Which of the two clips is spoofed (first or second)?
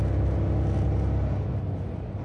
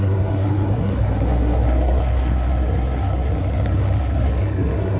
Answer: second